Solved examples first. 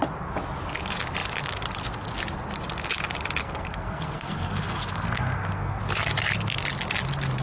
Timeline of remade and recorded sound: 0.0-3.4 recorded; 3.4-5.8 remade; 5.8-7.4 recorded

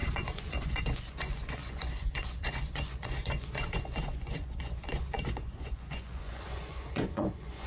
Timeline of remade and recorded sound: 0.0-7.7 remade

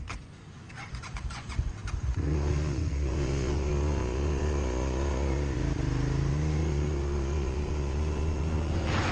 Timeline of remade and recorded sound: 0.0-5.6 remade; 5.6-6.3 recorded; 6.3-9.1 remade